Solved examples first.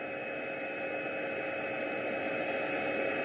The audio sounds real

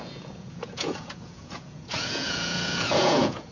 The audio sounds fake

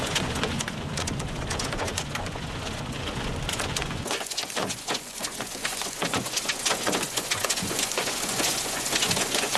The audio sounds fake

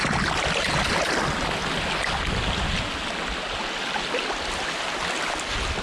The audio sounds real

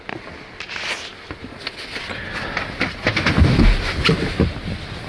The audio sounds real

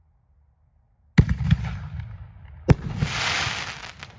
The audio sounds real